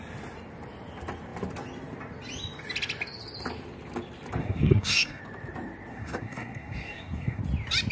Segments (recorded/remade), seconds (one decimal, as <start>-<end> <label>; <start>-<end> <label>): 0.0-4.4 recorded; 4.4-5.2 remade; 5.2-5.9 recorded; 5.9-7.4 remade; 7.4-7.9 recorded